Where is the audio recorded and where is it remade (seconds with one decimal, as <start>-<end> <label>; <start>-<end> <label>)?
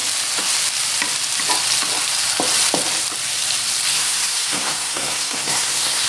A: 0.0-3.9 recorded; 3.9-6.1 remade